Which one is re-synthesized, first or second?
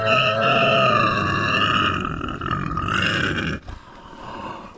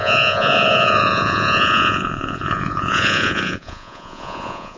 second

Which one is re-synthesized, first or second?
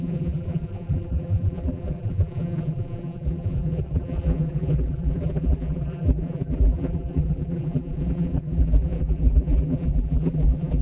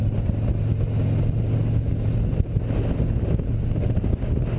first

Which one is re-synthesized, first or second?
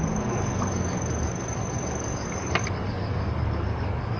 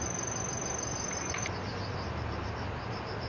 first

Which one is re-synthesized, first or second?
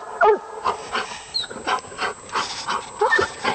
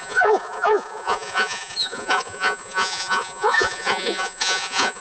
second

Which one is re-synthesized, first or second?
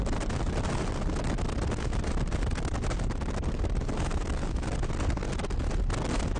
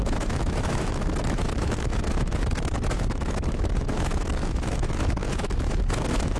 second